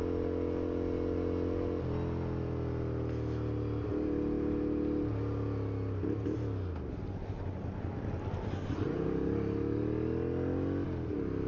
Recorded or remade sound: recorded